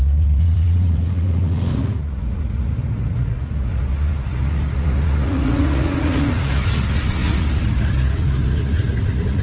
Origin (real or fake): fake